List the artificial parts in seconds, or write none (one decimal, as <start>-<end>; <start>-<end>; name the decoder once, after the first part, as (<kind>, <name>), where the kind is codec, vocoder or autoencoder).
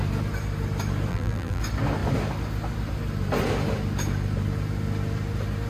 1.1-1.6 (vocoder, BigVGAN v2)